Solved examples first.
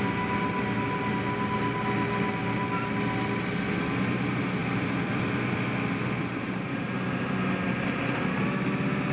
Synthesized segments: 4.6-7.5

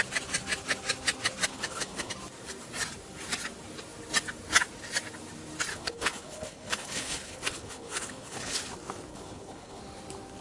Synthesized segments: 1.5-2.1; 5.7-8.6; 9.1-9.8

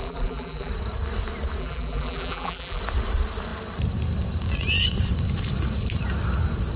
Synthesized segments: 0.0-0.7; 1.6-2.8

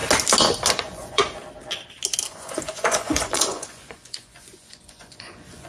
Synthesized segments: 0.7-1.2; 2.3-5.7

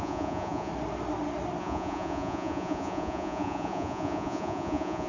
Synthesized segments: 0.0-0.7; 1.6-5.1

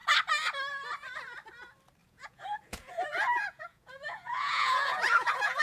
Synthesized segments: 2.0-5.6

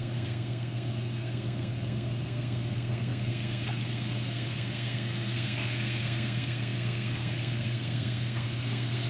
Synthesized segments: 0.0-9.1